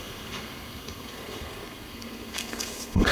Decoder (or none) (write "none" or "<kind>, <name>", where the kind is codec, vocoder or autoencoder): codec, SNAC